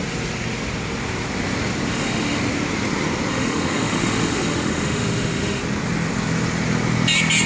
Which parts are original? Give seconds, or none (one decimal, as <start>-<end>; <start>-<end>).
0.0-1.9; 2.4-3.3; 5.6-7.5